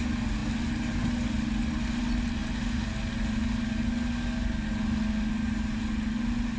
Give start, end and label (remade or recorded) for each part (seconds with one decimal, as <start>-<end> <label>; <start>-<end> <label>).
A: 0.0-6.6 recorded